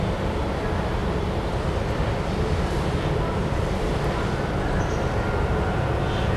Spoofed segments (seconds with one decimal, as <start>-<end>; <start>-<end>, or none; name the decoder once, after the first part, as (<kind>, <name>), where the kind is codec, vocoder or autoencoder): 1.0-4.8 (vocoder, BigVGAN v2)